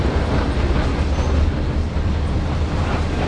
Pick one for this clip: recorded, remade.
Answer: recorded